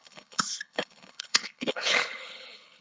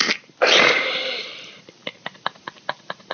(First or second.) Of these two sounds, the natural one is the second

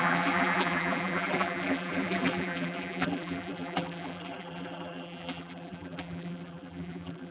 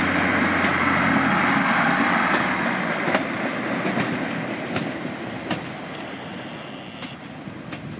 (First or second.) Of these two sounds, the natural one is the second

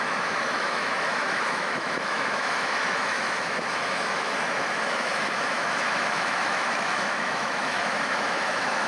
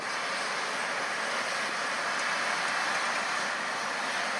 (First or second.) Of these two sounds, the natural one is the second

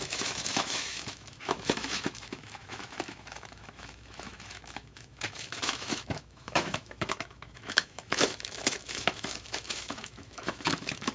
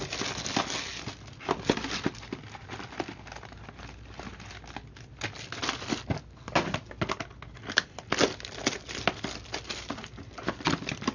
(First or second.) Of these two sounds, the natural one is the second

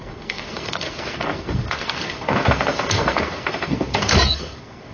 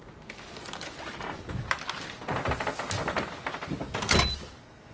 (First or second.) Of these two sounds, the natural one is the second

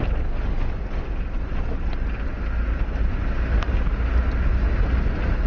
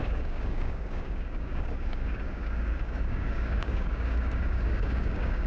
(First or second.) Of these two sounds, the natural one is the first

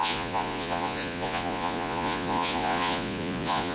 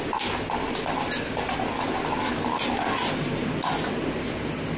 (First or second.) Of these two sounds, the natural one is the second